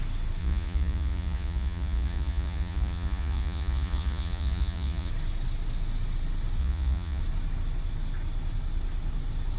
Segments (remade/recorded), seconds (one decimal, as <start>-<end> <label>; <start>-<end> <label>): 0.0-0.4 recorded; 0.4-5.1 remade; 5.1-6.6 recorded; 6.6-7.2 remade; 7.2-9.6 recorded